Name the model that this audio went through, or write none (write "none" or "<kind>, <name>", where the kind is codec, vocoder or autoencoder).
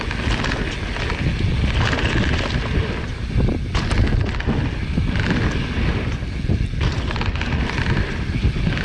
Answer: none